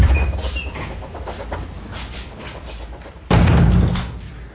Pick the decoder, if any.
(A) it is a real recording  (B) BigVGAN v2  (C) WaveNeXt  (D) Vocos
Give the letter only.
A